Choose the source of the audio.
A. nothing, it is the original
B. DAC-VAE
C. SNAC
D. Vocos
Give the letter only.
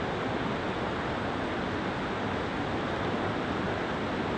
A